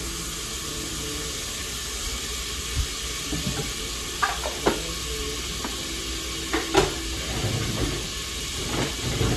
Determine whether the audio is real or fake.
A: real